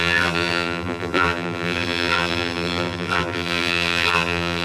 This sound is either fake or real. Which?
fake